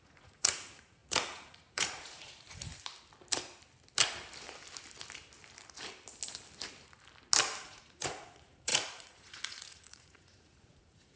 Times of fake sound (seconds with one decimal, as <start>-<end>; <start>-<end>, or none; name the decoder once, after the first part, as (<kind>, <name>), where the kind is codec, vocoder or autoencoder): 0.0-2.7 (vocoder, Vocos); 7.6-11.2